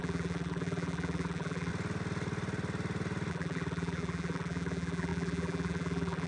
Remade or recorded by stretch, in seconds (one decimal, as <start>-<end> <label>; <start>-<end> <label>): 0.0-1.7 remade; 1.7-3.3 recorded; 3.3-6.3 remade